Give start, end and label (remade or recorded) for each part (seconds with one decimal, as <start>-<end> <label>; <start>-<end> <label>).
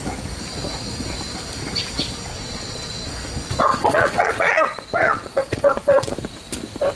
0.0-2.3 recorded; 2.3-3.1 remade; 3.1-3.7 recorded; 3.7-6.1 remade; 6.1-7.0 recorded